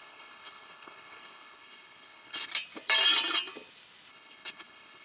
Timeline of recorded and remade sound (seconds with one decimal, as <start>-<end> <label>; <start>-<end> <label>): 0.0-2.5 remade; 2.5-4.1 recorded; 4.1-5.0 remade

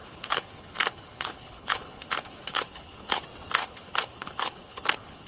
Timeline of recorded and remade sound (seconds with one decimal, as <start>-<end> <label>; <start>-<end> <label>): 0.0-3.2 remade; 3.2-3.6 recorded; 3.6-5.3 remade

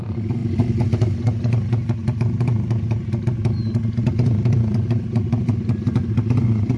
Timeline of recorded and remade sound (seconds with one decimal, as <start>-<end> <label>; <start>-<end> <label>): 0.0-6.8 recorded

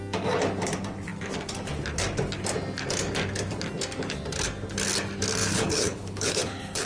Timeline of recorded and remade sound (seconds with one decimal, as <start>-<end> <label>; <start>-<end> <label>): 0.0-5.4 recorded; 5.4-6.9 remade